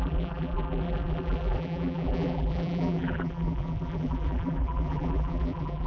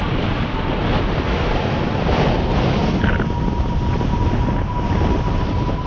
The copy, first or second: first